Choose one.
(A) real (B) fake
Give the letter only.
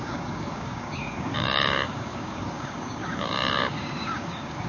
B